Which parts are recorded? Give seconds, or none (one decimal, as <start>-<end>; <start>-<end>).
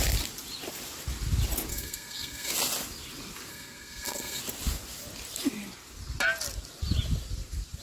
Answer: 0.0-1.7; 2.5-3.5; 4.4-7.8